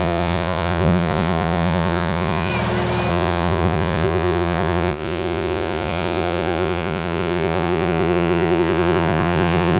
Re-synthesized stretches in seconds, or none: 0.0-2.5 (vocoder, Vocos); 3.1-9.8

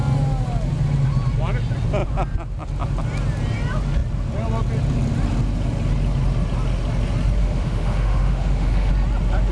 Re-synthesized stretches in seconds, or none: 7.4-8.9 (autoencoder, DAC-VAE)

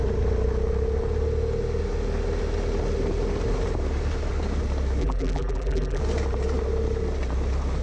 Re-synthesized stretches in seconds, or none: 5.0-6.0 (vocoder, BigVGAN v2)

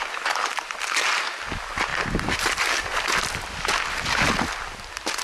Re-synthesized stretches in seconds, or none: none